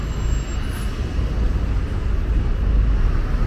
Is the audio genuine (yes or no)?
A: yes